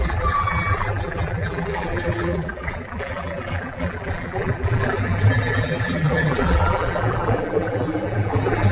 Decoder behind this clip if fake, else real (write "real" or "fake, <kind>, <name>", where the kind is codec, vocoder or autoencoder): fake, vocoder, BigVGAN v2